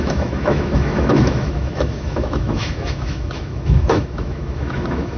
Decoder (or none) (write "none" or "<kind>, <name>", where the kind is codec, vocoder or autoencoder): autoencoder, DAC-VAE